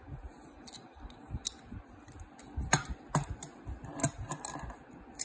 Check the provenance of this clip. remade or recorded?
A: recorded